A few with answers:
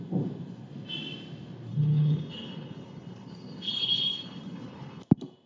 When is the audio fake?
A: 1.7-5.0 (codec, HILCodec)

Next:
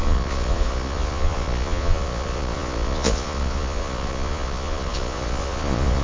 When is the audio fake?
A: 0.0-6.0 (vocoder, Vocos)